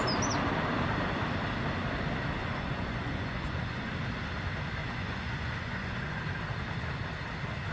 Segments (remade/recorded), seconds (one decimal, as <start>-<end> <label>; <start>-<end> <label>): 0.0-2.4 recorded; 2.4-3.9 remade; 3.9-4.8 recorded; 4.8-6.2 remade; 6.2-7.7 recorded